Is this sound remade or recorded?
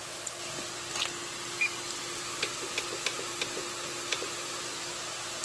recorded